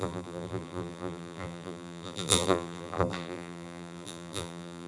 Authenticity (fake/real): fake